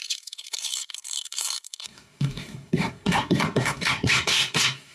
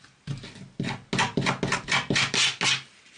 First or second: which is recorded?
second